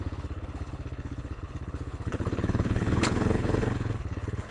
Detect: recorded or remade remade